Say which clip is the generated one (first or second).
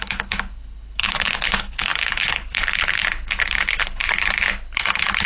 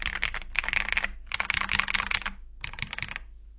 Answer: first